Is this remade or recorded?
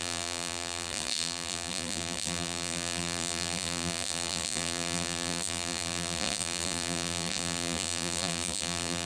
remade